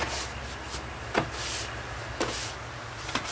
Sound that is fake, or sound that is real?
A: real